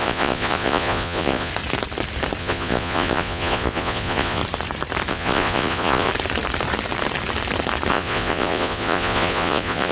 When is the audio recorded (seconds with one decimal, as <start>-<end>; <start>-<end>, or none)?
1.5-2.4; 4.4-5.1; 6.1-7.9